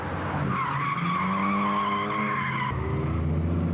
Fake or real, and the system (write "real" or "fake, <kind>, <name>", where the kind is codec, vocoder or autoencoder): real